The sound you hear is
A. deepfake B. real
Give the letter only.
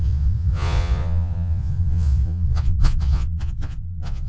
A